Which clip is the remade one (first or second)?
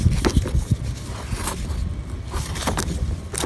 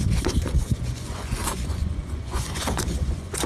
second